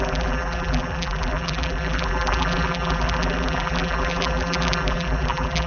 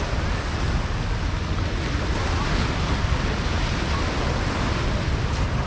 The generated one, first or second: first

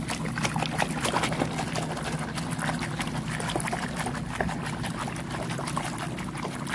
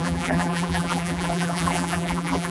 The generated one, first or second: second